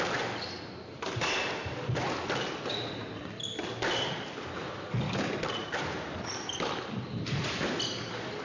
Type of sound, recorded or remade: recorded